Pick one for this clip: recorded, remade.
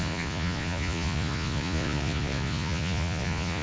remade